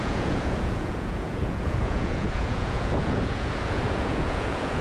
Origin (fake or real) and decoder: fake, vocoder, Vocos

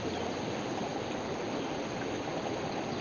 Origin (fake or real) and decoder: real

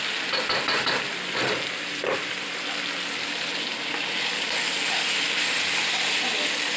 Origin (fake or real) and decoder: real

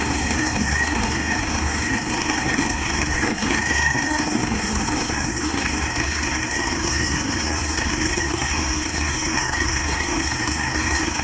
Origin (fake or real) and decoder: fake, codec, SNAC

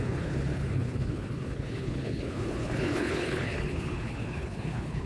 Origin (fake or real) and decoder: fake, codec, HILCodec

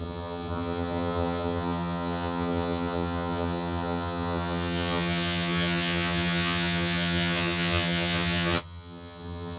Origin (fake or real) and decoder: fake, vocoder, HiFi-GAN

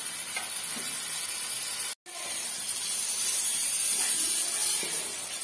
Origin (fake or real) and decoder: real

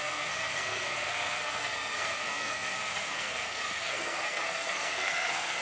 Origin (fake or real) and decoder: fake, codec, SNAC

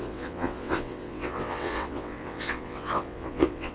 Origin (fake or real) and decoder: fake, vocoder, WaveNeXt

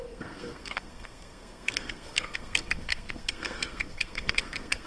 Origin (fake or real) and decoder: fake, codec, SNAC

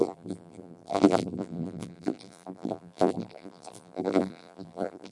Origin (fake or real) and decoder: fake, vocoder, BigVGAN v2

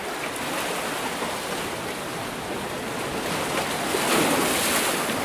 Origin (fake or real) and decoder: real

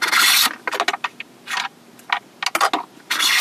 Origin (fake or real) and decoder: real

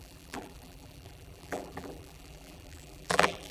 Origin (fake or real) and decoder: fake, vocoder, BigVGAN v2